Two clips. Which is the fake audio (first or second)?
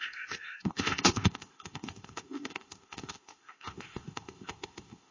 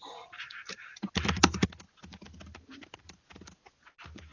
first